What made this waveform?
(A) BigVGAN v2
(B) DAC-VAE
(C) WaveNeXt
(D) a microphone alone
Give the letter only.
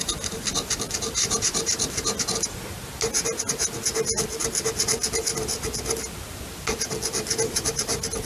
D